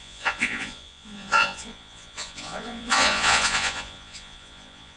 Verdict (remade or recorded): remade